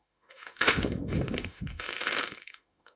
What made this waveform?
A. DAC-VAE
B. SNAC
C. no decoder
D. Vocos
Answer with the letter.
A